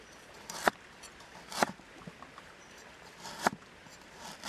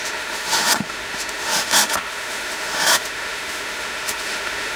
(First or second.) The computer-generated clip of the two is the second